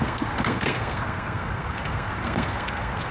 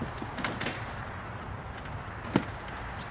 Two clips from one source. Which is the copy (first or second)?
first